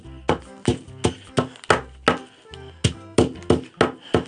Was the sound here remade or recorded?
recorded